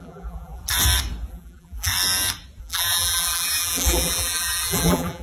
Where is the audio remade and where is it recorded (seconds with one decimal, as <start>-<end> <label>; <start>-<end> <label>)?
0.0-0.6 remade; 0.6-1.3 recorded; 1.3-1.9 remade; 1.9-2.6 recorded; 2.6-5.2 remade